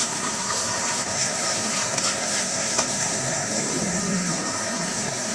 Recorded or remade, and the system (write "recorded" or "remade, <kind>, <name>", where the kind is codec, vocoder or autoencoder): remade, codec, SNAC